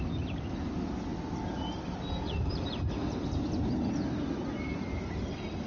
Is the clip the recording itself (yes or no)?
yes